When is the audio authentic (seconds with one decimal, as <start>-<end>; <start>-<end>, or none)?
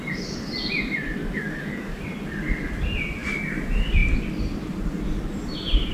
0.0-1.2; 2.0-5.9